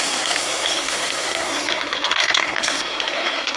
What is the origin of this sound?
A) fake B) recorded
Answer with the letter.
A